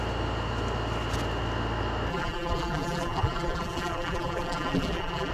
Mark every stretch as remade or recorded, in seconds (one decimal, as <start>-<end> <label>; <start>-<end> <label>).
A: 0.0-2.1 recorded; 2.1-5.3 remade

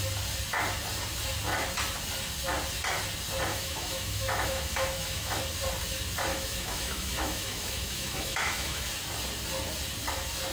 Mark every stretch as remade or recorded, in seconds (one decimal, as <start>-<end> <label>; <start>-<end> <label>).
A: 0.0-3.5 recorded; 3.5-5.4 remade; 5.4-6.3 recorded; 6.3-8.9 remade; 8.9-10.5 recorded

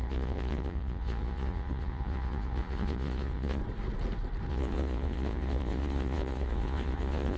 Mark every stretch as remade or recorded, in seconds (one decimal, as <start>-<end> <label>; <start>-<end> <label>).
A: 0.0-3.6 remade; 3.6-4.5 recorded; 4.5-7.4 remade

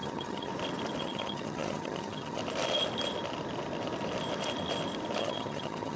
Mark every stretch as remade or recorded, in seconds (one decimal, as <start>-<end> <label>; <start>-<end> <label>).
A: 0.0-0.5 remade; 0.5-1.0 recorded; 1.0-2.4 remade; 2.4-5.2 recorded; 5.2-6.0 remade

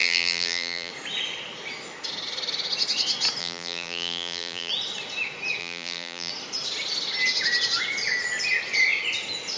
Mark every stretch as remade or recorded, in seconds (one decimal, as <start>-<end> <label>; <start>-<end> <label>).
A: 0.0-0.9 remade; 0.9-3.4 recorded; 3.4-4.7 remade; 4.7-5.6 recorded; 5.6-6.3 remade; 6.3-9.6 recorded

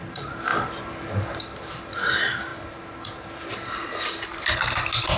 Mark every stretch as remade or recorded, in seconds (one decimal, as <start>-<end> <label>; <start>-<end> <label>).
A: 0.0-0.5 remade; 0.5-1.4 recorded; 1.4-2.5 remade; 2.5-3.5 recorded; 3.5-5.2 remade